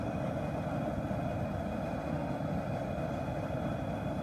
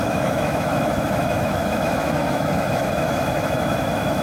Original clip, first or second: first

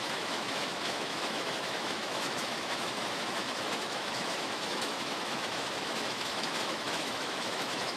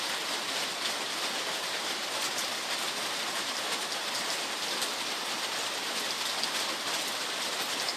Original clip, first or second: second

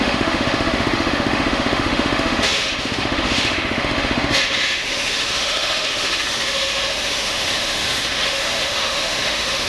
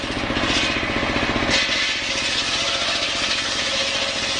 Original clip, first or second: second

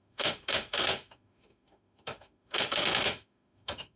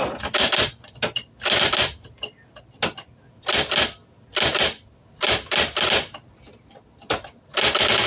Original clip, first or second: second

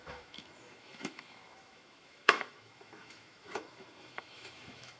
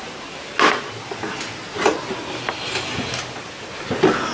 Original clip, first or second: second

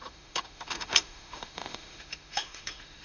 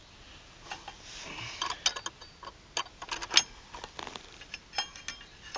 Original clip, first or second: second